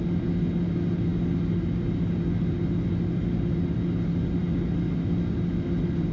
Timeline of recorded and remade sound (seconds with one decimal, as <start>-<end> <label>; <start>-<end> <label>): 0.0-6.1 recorded